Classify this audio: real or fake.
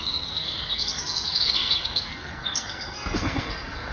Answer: fake